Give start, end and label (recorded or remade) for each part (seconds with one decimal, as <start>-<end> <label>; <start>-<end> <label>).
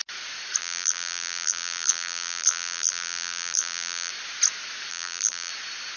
0.0-0.6 recorded; 0.6-4.1 remade; 4.1-4.9 recorded; 4.9-5.5 remade; 5.5-6.0 recorded